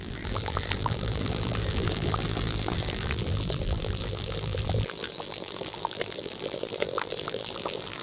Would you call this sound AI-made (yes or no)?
yes